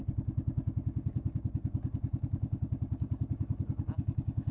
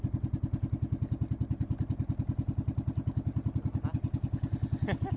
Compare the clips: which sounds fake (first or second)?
first